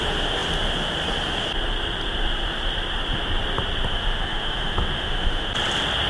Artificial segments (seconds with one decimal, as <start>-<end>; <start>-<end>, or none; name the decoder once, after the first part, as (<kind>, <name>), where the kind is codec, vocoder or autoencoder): 3.9-5.5 (autoencoder, DAC-VAE)